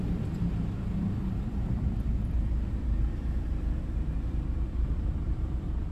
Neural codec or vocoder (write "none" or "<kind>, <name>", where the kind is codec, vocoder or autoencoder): vocoder, BigVGAN v2